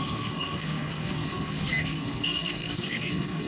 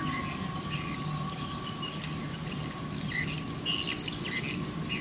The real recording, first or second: second